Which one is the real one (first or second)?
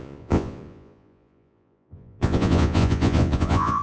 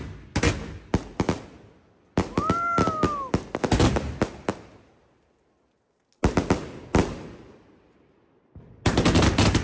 second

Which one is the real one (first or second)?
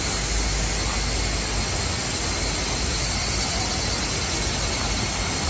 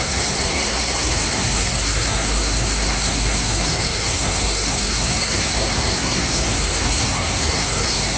first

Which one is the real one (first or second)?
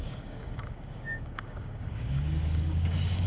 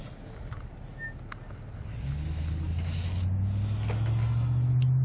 second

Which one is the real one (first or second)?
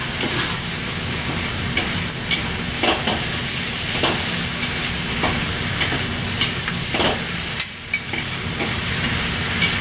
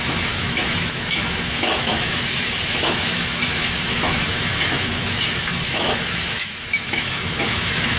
first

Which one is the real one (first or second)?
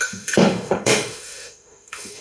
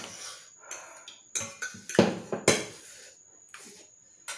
second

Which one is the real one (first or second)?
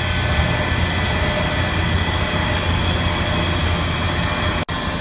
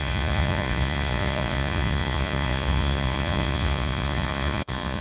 first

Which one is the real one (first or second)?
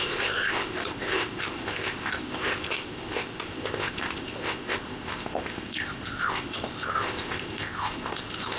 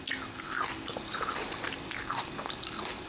second